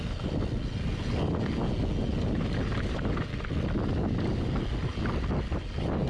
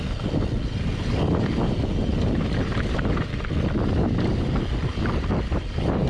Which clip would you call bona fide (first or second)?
first